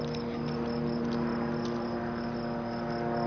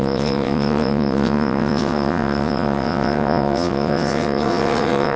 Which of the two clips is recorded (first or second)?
first